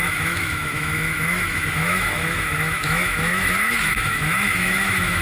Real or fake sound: fake